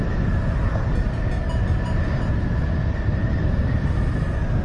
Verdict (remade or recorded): recorded